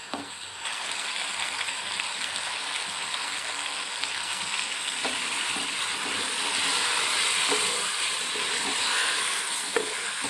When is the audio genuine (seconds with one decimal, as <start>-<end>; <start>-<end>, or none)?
5.0-8.8